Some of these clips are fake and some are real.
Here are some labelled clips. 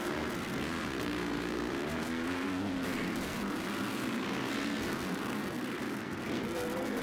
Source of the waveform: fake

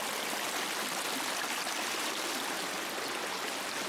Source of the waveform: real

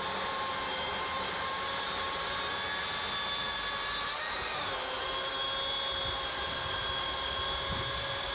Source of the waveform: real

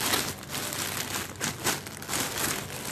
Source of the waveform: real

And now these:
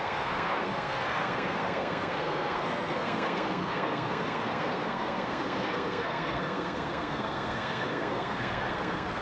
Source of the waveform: fake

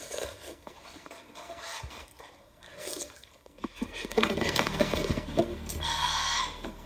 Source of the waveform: fake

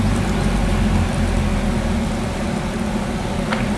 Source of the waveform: real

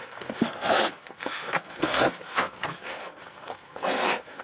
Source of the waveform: fake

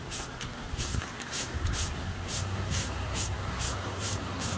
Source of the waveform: fake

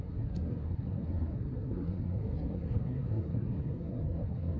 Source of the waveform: fake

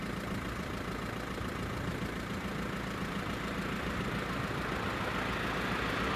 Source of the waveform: real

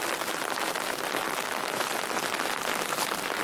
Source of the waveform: real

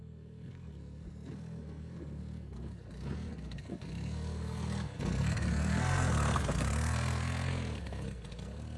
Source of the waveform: fake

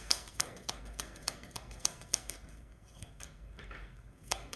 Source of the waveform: fake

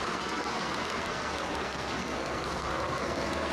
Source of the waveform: fake